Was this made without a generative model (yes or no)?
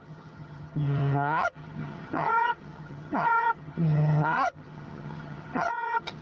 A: no